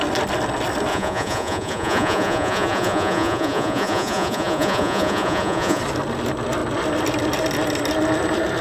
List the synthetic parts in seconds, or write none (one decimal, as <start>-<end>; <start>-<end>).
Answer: 0.9-5.8